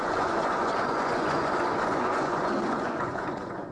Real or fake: fake